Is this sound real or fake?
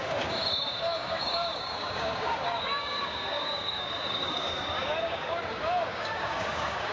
fake